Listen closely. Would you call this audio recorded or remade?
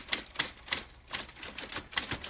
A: recorded